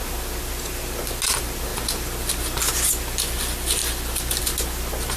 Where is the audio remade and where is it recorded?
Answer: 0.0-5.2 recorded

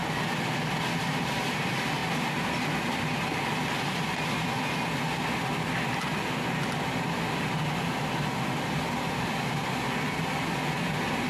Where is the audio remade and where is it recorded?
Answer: 0.0-11.3 recorded

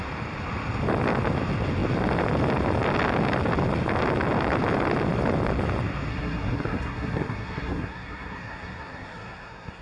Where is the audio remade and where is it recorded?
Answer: 0.0-6.1 recorded; 6.1-9.8 remade